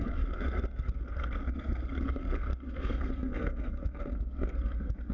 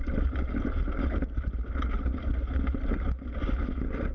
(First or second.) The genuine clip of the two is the second